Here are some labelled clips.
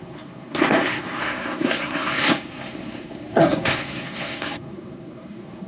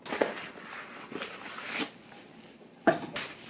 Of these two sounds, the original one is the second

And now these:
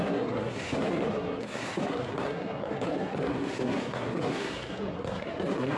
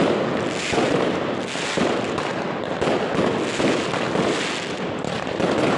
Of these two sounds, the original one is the second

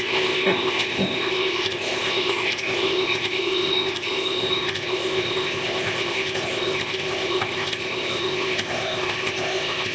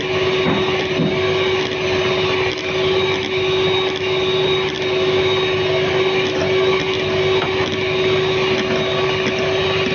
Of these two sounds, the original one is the second